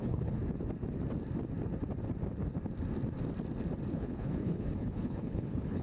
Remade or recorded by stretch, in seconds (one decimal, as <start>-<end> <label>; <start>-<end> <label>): 0.0-0.4 remade; 0.4-3.9 recorded; 3.9-5.8 remade